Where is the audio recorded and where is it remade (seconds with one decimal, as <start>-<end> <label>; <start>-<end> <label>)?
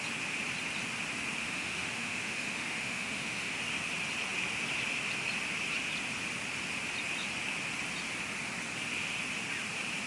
0.0-1.4 recorded; 1.4-3.6 remade; 3.6-10.1 recorded